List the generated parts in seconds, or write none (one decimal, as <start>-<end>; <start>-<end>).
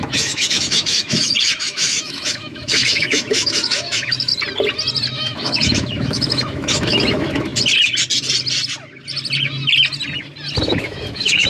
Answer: 0.0-4.3; 5.1-7.5; 10.6-11.5